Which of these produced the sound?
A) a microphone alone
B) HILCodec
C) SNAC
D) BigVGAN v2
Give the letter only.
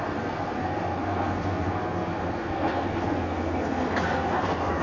C